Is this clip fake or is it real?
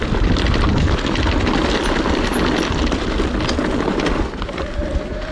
real